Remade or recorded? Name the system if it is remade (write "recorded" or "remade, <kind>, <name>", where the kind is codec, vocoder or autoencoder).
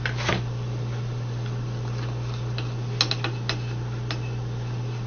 recorded